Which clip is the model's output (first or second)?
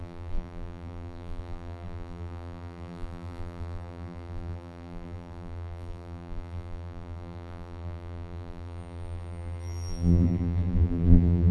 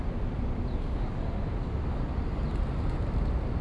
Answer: first